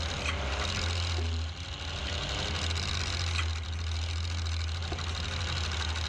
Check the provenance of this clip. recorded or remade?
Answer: recorded